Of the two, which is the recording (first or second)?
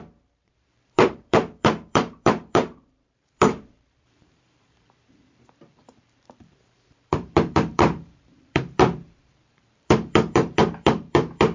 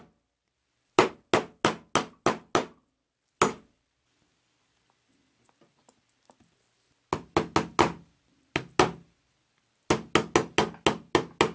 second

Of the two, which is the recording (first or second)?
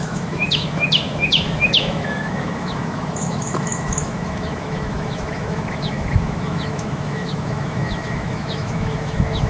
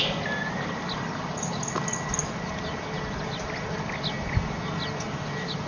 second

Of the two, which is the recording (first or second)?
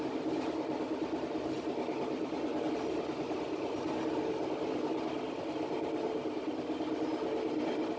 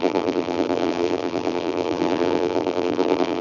first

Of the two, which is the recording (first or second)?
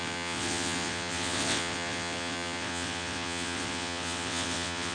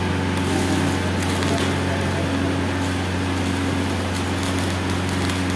second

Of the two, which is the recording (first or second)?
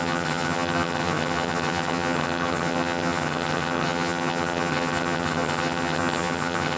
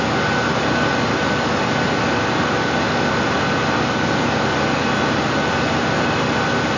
second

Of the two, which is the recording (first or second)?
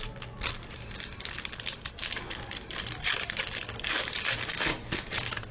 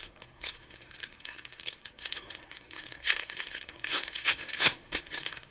first